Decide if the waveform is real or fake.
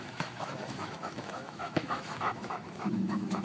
fake